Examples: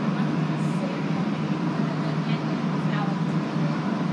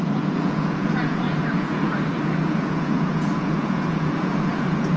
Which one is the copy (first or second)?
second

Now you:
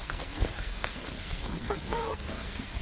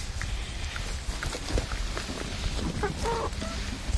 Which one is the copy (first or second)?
first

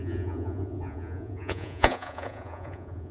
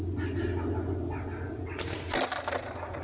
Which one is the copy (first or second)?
first